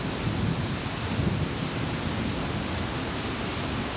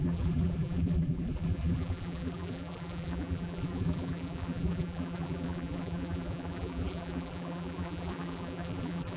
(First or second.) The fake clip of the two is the second